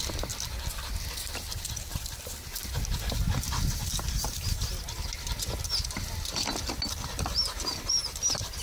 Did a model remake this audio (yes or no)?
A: no